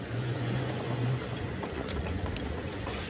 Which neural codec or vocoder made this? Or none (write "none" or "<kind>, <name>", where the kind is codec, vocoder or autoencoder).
vocoder, Vocos